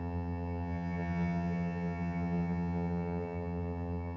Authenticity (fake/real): fake